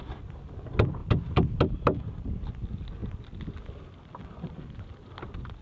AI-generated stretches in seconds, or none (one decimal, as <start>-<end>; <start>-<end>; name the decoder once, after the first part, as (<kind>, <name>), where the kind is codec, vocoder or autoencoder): none